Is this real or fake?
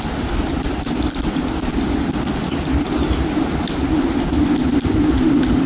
real